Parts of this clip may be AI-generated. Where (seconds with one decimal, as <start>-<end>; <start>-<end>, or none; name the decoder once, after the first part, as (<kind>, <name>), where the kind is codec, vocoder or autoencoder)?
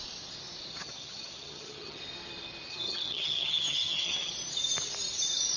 0.7-2.0 (vocoder, HiFi-GAN); 2.7-4.3